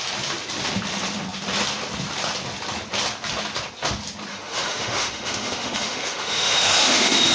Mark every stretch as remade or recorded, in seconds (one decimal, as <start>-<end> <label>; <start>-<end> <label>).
0.0-4.3 recorded; 4.3-7.3 remade